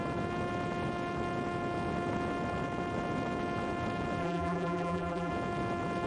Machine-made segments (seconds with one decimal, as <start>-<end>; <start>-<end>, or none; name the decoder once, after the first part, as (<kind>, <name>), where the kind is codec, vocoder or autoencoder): 4.2-5.3 (vocoder, BigVGAN v2)